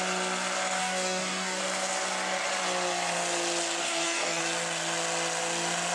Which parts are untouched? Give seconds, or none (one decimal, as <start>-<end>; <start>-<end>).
0.0-0.8; 1.6-3.8; 4.4-5.9